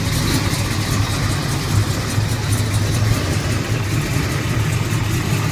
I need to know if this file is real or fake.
real